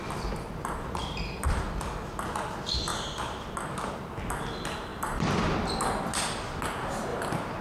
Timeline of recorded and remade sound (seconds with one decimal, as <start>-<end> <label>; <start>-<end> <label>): 0.0-1.0 recorded; 1.0-2.0 remade; 2.0-4.9 recorded; 4.9-6.0 remade; 6.0-7.6 recorded